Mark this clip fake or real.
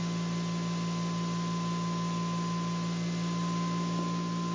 real